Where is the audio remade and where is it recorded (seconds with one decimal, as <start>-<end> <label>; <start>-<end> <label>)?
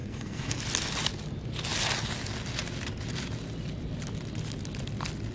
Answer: 0.0-0.6 remade; 0.6-5.3 recorded